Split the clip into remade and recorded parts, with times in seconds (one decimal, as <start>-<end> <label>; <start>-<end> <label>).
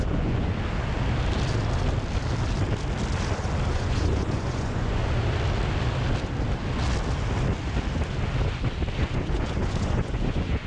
0.0-0.5 remade; 0.5-3.7 recorded; 3.7-5.0 remade; 5.0-9.0 recorded; 9.0-10.7 remade